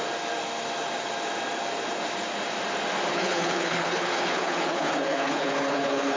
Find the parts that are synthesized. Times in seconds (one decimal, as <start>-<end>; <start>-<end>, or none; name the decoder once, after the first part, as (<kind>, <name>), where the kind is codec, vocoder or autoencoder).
3.1-6.2 (codec, HILCodec)